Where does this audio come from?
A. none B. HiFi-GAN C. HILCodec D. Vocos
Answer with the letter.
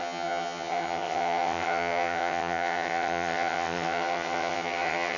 B